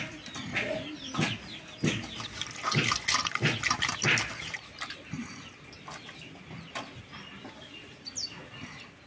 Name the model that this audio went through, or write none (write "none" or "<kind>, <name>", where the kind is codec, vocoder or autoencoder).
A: none